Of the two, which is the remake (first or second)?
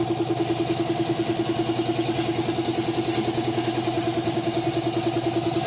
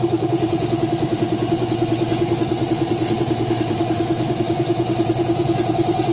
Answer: second